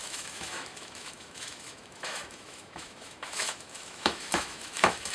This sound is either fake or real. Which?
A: fake